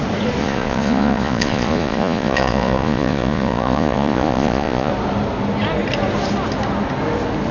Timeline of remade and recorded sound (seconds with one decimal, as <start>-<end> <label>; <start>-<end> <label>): 0.0-0.4 recorded; 0.4-4.9 remade; 4.9-7.5 recorded